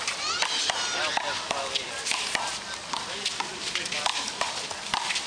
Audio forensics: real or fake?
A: real